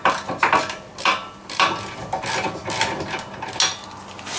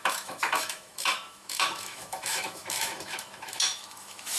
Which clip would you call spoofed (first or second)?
second